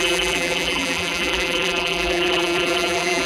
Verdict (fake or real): fake